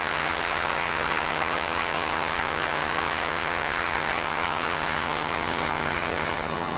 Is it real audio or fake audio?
fake